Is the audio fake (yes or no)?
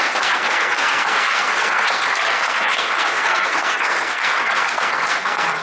yes